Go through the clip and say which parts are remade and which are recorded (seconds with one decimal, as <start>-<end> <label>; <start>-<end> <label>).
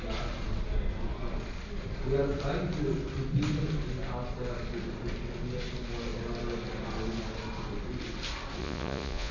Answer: 0.0-8.6 recorded; 8.6-9.3 remade